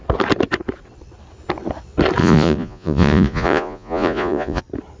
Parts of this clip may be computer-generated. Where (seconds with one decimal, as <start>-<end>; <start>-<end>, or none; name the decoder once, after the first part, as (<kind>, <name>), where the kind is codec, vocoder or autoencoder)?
2.2-4.6 (vocoder, Vocos)